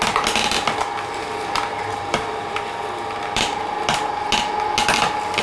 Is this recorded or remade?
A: recorded